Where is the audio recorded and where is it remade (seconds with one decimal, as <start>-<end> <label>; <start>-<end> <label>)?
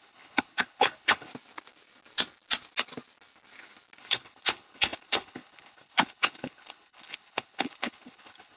0.0-1.3 remade; 1.3-4.0 recorded; 4.0-8.6 remade